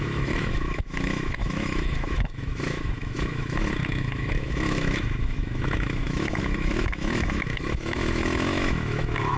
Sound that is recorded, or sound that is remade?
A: remade